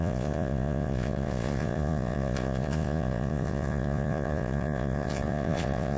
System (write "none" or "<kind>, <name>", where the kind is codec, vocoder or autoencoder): vocoder, Vocos